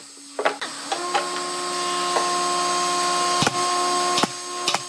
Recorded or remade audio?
recorded